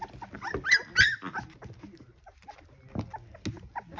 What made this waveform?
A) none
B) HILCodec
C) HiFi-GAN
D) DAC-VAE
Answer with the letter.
A